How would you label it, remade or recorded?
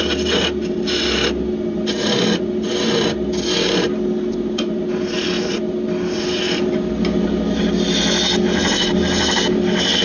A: recorded